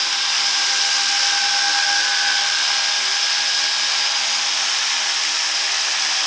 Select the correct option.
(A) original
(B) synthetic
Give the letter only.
A